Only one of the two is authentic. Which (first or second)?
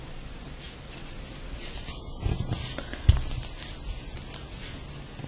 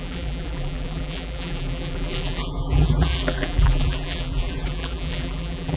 first